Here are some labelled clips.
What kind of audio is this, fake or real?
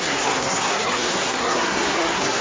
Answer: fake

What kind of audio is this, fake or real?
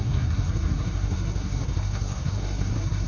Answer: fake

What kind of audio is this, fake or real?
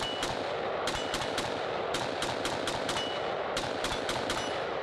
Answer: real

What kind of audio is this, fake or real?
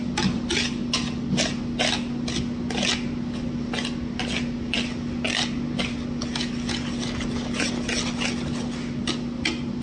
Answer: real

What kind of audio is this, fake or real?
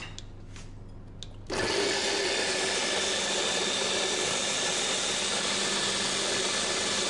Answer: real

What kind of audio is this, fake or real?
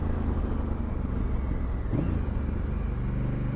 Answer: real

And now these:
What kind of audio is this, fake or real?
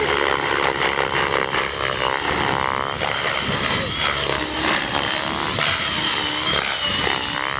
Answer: real